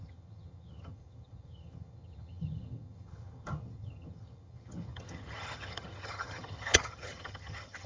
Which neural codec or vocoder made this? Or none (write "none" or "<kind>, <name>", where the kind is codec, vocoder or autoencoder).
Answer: vocoder, HiFi-GAN